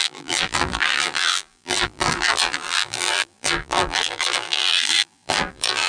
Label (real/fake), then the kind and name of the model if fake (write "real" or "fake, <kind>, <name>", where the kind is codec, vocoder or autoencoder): fake, vocoder, BigVGAN v2